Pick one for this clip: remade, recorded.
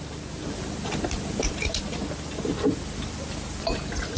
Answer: recorded